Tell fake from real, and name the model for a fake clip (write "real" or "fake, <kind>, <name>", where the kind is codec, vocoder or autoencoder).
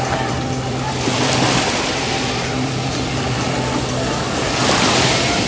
fake, vocoder, BigVGAN v2